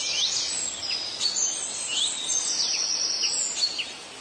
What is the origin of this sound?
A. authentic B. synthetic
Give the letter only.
A